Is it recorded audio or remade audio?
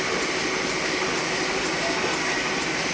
recorded